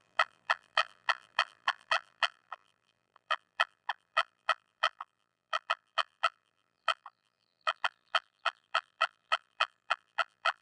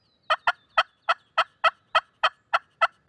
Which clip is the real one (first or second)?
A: second